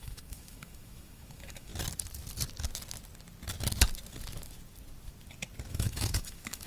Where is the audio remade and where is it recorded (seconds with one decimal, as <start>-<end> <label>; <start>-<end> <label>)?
0.0-1.7 remade; 1.7-5.7 recorded; 5.7-6.7 remade